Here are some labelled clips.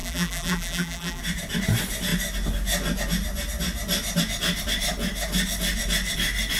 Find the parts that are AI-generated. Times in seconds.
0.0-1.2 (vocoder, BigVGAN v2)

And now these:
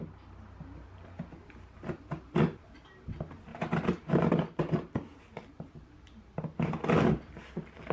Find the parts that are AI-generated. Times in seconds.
3.5-4.2 (vocoder, BigVGAN v2); 5.1-6.4

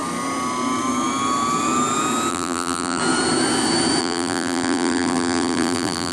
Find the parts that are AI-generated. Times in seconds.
2.3-3.0 (vocoder, BigVGAN v2); 4.0-6.1

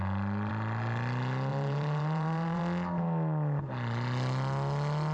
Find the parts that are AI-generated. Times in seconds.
1.5-2.6 (vocoder, BigVGAN v2)

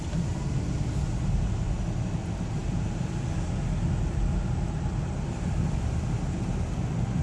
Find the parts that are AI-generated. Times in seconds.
none

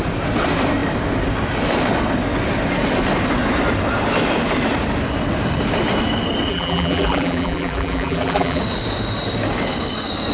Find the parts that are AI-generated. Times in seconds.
6.5-8.6 (vocoder, BigVGAN v2)

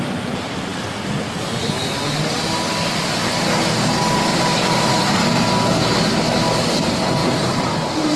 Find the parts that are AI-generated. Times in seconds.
4.3-5.4 (vocoder, BigVGAN v2); 7.2-8.2

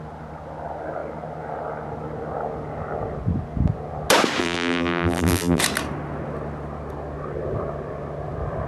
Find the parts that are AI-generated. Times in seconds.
4.4-5.6 (vocoder, BigVGAN v2)